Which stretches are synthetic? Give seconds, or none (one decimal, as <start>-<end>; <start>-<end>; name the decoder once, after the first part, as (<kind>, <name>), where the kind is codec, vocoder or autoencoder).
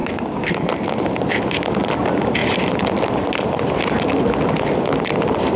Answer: 0.0-0.5 (codec, DAC)